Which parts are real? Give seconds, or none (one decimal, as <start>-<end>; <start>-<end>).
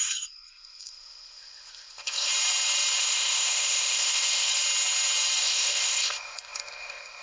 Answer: 2.3-3.0; 4.5-5.4